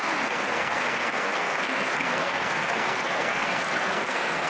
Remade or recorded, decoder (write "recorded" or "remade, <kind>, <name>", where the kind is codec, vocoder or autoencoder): remade, codec, SNAC